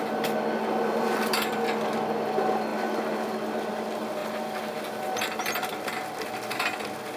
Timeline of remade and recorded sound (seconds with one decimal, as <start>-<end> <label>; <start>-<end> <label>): 0.0-4.2 recorded; 4.2-4.8 remade; 4.8-7.2 recorded

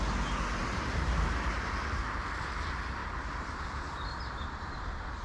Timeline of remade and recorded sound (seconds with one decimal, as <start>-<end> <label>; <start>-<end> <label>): 0.0-0.6 recorded; 0.6-2.0 remade; 2.0-3.0 recorded; 3.0-4.8 remade; 4.8-5.2 recorded

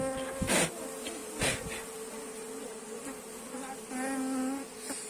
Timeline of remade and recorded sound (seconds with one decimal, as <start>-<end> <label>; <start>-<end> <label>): 0.0-5.1 recorded

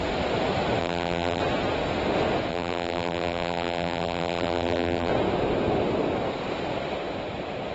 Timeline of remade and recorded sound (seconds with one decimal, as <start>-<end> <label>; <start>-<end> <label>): 0.0-0.8 recorded; 0.8-1.4 remade; 1.4-2.5 recorded; 2.5-5.1 remade; 5.1-7.7 recorded

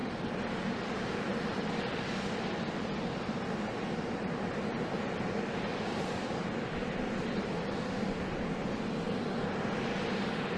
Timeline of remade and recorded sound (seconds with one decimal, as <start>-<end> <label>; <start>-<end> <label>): 0.0-1.7 remade; 1.7-5.9 recorded; 5.9-8.9 remade; 8.9-10.6 recorded

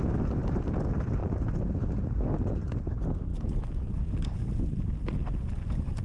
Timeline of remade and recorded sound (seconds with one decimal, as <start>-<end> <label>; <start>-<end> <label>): 0.0-1.2 recorded; 1.2-2.8 remade; 2.8-3.3 recorded; 3.3-4.7 remade; 4.7-6.0 recorded

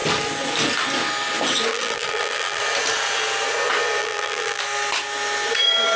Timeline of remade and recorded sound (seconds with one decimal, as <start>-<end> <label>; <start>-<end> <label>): 0.0-1.7 recorded; 1.7-2.6 remade; 2.6-4.0 recorded; 4.0-4.6 remade; 4.6-6.0 recorded